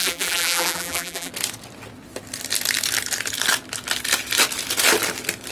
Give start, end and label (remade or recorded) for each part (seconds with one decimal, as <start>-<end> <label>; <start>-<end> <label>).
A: 0.0-1.3 remade; 1.3-5.5 recorded